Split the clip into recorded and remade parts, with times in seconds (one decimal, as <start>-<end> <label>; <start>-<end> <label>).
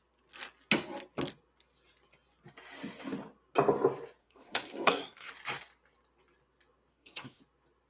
0.0-4.2 recorded; 4.2-5.3 remade; 5.3-6.9 recorded; 6.9-7.4 remade; 7.4-7.9 recorded